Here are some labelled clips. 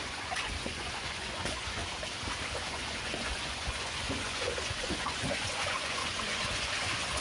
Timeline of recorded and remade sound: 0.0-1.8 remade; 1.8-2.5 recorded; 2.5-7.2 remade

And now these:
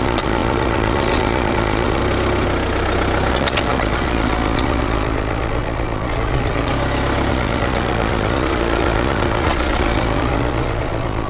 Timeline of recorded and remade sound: 0.0-2.0 remade; 2.0-3.3 recorded; 3.3-6.7 remade; 6.7-7.3 recorded; 7.3-11.3 remade

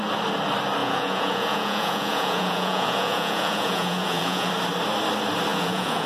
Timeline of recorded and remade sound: 0.0-0.8 recorded; 0.8-4.5 remade; 4.5-5.5 recorded; 5.5-6.1 remade

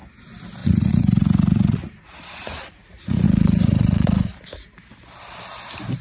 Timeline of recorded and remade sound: 0.0-0.6 recorded; 0.6-4.2 remade; 4.2-6.0 recorded

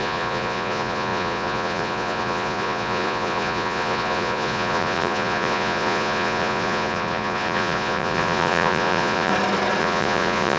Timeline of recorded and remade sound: 0.0-9.3 remade; 9.3-9.8 recorded; 9.8-10.6 remade

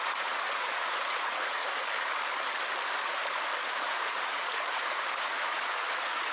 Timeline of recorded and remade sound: 0.0-1.6 remade; 1.6-3.6 recorded; 3.6-6.3 remade

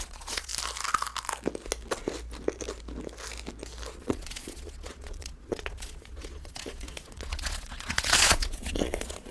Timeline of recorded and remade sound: 0.0-0.5 remade; 0.5-3.9 recorded; 3.9-9.3 remade

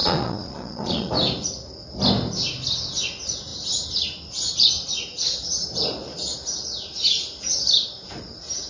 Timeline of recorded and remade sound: 0.0-1.1 remade; 1.1-8.7 recorded